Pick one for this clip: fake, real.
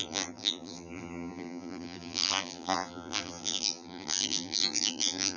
fake